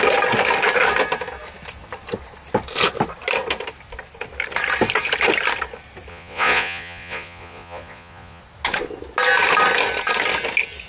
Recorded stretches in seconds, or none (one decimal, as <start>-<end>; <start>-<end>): 0.0-6.1; 8.4-10.9